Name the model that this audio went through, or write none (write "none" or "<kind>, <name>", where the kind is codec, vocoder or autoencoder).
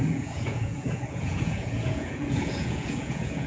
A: vocoder, Vocos